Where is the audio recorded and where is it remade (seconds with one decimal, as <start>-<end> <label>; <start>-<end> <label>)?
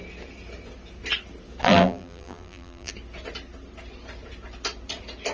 0.0-1.6 recorded; 1.6-2.9 remade; 2.9-5.3 recorded